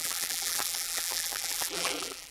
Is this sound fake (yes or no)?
yes